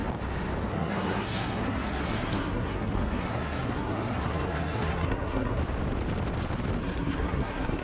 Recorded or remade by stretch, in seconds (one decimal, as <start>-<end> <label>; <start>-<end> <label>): 0.0-0.7 recorded; 0.7-5.6 remade; 5.6-6.8 recorded; 6.8-7.8 remade

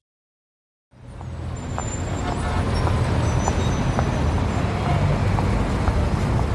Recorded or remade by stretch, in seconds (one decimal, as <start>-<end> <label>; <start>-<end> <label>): 0.0-6.5 recorded